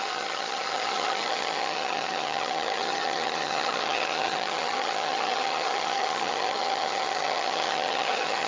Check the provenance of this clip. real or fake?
fake